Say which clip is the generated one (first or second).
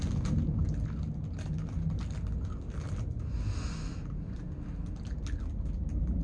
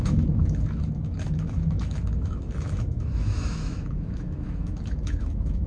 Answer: second